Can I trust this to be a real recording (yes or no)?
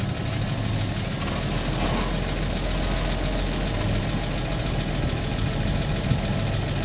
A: yes